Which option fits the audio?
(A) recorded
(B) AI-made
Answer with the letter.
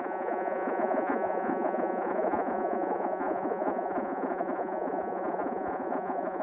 B